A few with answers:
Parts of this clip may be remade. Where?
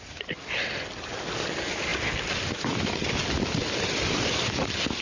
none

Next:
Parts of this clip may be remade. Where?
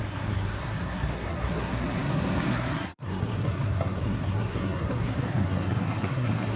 0.0-6.6 (codec, SNAC)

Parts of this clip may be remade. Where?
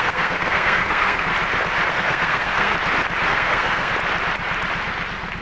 0.0-1.3 (codec, SNAC); 1.9-2.7; 3.3-3.9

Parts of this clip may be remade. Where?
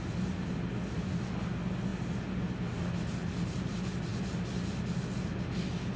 none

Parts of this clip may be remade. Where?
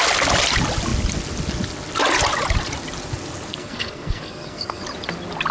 3.5-4.8 (codec, SNAC)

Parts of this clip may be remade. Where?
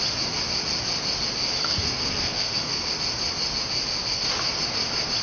1.6-2.9 (codec, SNAC)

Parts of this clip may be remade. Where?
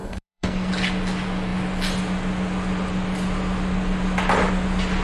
0.0-0.7 (codec, SNAC)